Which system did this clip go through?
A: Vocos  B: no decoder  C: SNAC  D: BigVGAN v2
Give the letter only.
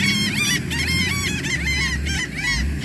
B